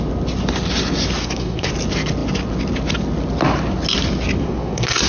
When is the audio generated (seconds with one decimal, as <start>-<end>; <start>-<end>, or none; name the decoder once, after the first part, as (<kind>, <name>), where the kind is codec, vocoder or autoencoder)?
1.2-1.7 (codec, SNAC); 4.4-5.1